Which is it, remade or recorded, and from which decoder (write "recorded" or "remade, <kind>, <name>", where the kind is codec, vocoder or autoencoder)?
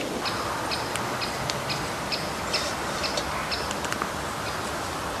recorded